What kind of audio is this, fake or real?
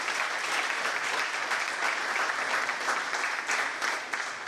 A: fake